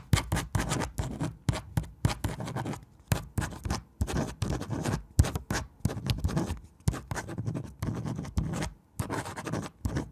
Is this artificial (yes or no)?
no